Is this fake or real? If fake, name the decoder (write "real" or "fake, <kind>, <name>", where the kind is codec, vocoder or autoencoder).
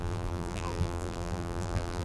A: fake, vocoder, BigVGAN v2